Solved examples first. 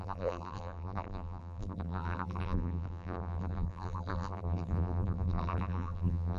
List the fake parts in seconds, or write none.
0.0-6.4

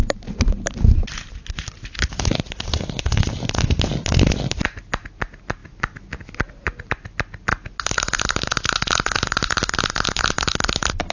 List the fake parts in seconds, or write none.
none

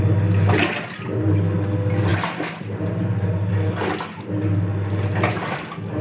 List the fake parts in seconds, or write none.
2.1-3.5

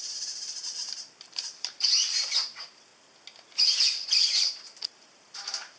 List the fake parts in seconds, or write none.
0.0-2.9; 4.9-5.8